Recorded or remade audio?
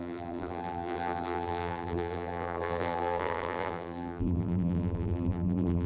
remade